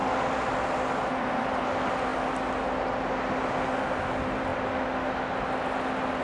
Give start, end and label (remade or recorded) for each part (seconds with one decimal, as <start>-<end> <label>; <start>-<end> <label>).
0.0-6.2 recorded